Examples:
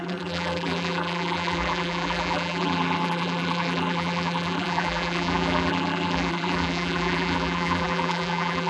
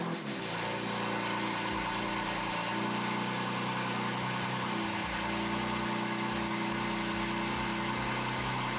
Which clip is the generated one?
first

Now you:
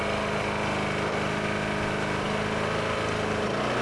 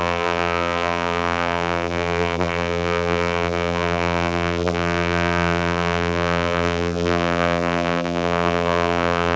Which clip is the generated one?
second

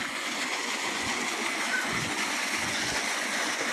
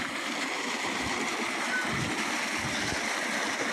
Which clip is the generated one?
first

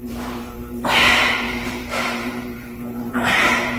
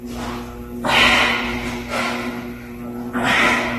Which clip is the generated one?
first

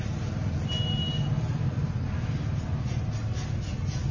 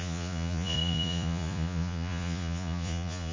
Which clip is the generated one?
second